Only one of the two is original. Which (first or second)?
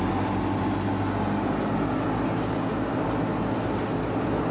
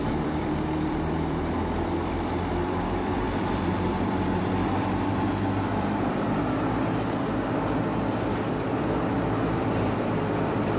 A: first